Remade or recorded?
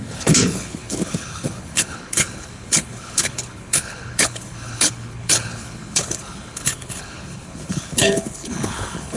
remade